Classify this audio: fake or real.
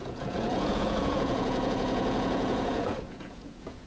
fake